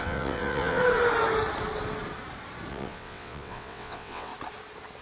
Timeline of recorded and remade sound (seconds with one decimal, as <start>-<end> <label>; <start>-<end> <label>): 0.0-0.8 remade; 0.8-2.7 recorded; 2.7-4.3 remade; 4.3-5.0 recorded